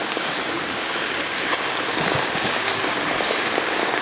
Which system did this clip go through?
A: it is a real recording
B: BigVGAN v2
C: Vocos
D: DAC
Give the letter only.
D